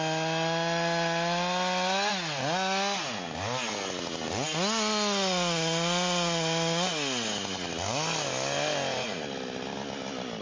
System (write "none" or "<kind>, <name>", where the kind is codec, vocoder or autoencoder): none